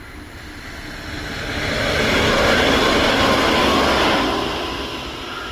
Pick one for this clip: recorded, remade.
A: recorded